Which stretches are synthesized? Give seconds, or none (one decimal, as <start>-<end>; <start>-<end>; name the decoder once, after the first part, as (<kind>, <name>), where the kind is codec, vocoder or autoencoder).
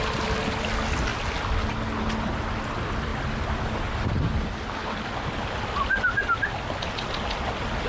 none